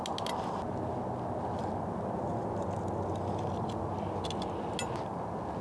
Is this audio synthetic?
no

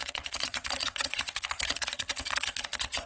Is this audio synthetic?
yes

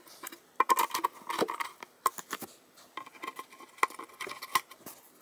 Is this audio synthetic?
no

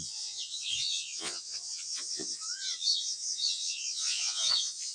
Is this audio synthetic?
yes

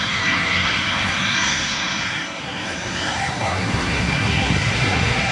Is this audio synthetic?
yes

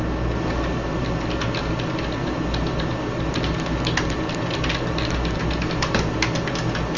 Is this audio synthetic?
no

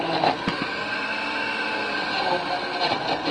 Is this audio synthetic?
no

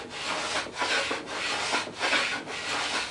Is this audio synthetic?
no